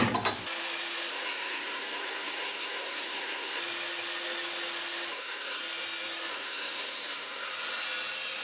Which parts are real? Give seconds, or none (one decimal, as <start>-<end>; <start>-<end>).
0.0-1.1; 3.6-5.1; 5.6-6.3; 7.5-8.4